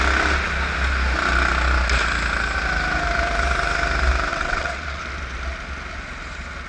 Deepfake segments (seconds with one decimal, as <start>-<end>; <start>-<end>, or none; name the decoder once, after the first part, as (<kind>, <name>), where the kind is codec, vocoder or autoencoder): 4.3-5.0 (vocoder, WaveNeXt)

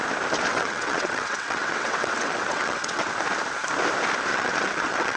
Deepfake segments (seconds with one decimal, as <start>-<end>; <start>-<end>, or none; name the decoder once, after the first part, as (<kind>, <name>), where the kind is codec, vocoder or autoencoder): 0.5-3.1 (vocoder, WaveNeXt); 4.3-5.2

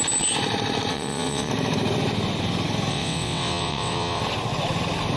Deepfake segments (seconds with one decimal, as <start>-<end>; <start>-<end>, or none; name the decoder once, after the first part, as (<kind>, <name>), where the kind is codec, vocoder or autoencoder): 0.9-1.5 (vocoder, WaveNeXt); 2.9-4.2

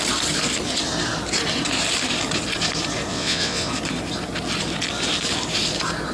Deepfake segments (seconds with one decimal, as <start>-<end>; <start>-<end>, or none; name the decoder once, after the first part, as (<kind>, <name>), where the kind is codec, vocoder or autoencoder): 3.1-3.7 (vocoder, WaveNeXt)

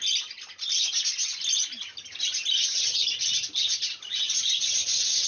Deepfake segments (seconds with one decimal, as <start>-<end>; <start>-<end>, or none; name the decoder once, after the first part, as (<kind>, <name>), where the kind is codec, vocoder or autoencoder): none

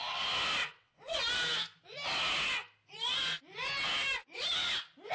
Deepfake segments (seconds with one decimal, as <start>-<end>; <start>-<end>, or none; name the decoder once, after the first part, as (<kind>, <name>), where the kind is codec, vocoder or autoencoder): 0.6-1.2 (vocoder, WaveNeXt)

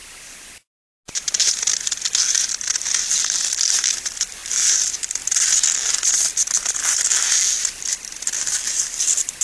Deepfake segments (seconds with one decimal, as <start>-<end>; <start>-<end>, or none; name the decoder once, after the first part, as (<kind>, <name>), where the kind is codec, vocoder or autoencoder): none